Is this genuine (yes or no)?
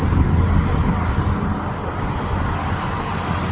yes